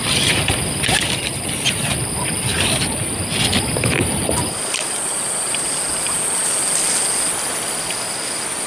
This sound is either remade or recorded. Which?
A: recorded